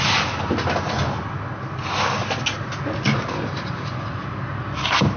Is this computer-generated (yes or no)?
no